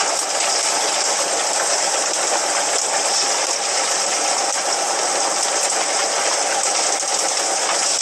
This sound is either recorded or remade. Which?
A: recorded